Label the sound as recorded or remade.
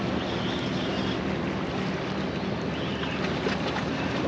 recorded